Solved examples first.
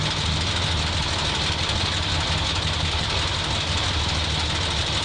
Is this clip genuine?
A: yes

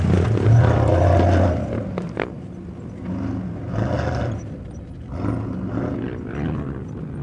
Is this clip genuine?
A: yes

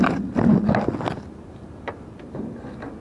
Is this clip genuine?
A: yes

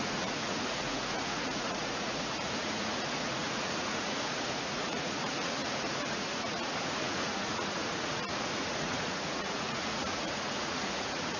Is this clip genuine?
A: no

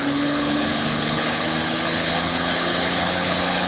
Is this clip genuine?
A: no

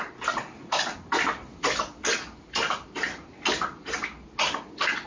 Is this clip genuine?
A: yes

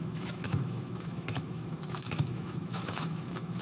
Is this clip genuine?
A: no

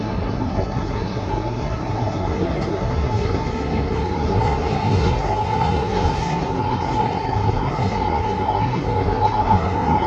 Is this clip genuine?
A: no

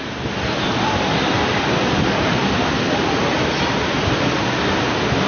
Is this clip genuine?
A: yes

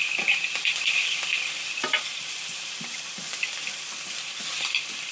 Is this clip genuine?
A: no